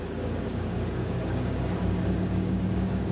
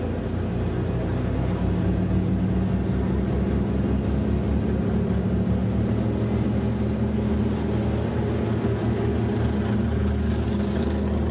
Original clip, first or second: second